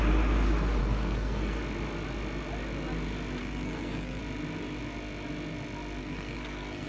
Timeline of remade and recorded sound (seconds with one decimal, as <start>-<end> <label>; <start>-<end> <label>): 0.0-0.8 recorded; 0.8-1.6 remade; 1.6-3.4 recorded; 3.4-4.2 remade; 4.2-6.0 recorded; 6.0-6.9 remade